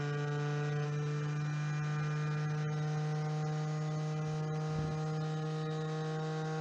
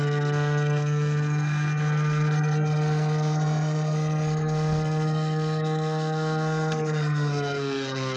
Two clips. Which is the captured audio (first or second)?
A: first